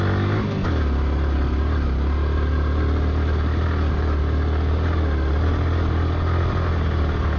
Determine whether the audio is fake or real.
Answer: real